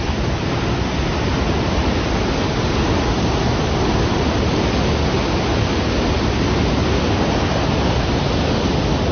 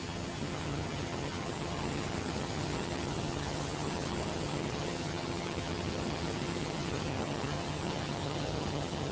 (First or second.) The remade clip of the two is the second